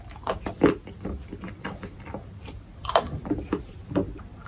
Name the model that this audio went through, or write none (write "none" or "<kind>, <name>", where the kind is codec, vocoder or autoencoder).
none